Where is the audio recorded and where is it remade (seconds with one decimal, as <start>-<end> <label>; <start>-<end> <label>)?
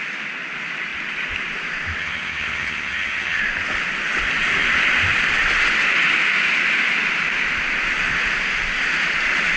0.0-2.0 recorded; 2.0-3.4 remade; 3.4-9.6 recorded